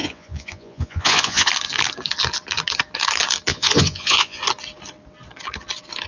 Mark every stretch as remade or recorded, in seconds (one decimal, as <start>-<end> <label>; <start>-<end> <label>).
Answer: 0.0-1.5 remade; 1.5-3.5 recorded; 3.5-4.4 remade; 4.4-6.1 recorded